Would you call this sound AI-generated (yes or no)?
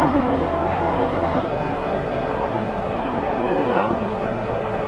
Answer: yes